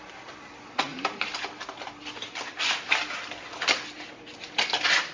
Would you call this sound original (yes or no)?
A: yes